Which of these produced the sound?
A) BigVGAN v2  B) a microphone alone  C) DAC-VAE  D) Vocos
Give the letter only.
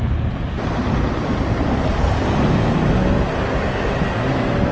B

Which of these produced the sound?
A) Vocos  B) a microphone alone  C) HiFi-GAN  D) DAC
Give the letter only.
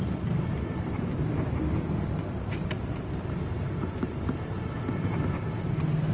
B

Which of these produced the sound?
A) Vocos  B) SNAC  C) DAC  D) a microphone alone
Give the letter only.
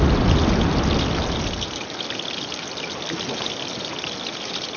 D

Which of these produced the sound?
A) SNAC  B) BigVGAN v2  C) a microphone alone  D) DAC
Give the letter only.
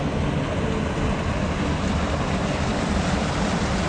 C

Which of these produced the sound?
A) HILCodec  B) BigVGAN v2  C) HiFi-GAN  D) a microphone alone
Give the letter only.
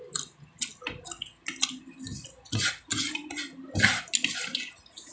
D